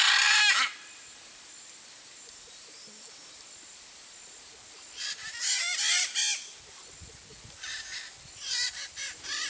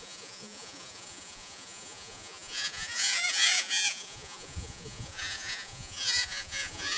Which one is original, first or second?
first